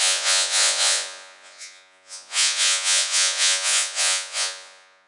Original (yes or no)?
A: no